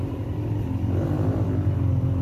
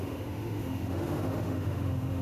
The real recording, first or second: first